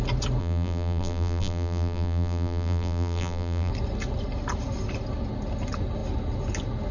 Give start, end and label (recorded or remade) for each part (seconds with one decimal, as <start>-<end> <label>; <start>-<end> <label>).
0.0-0.4 recorded; 0.4-3.7 remade; 3.7-6.9 recorded